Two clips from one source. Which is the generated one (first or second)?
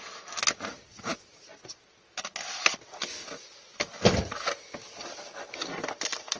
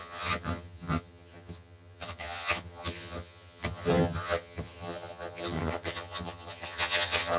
second